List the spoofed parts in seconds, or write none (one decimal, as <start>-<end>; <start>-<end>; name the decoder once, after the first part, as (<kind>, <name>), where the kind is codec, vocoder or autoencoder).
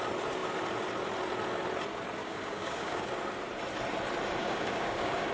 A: 2.2-3.1 (codec, DAC); 4.4-5.3